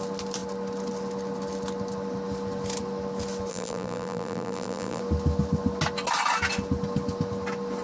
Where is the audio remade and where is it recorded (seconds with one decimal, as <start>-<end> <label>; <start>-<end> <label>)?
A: 0.0-3.5 recorded; 3.5-5.0 remade; 5.0-7.8 recorded